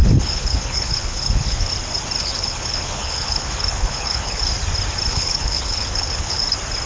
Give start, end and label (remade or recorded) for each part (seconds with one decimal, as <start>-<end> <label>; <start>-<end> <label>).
0.0-1.7 remade; 1.7-2.2 recorded; 2.2-4.4 remade; 4.4-5.1 recorded; 5.1-6.4 remade; 6.4-6.9 recorded